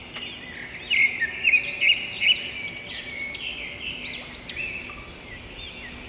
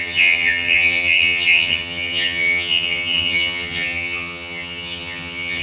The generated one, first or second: second